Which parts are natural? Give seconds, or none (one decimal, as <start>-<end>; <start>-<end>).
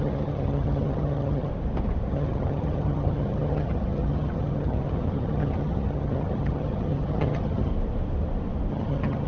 1.5-2.1; 7.7-8.7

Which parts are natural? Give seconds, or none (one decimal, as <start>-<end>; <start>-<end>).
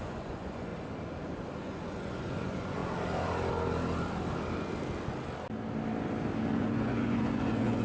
0.7-1.6; 2.8-6.5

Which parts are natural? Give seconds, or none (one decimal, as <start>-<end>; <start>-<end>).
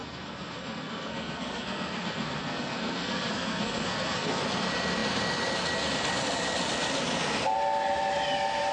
4.4-8.7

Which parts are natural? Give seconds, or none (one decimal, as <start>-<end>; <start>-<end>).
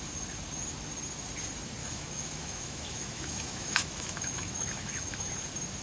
0.0-1.8; 5.3-5.8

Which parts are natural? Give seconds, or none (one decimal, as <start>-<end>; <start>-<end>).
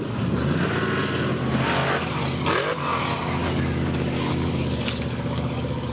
0.0-3.4